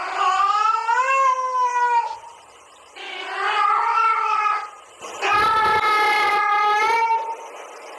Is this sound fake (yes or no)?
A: no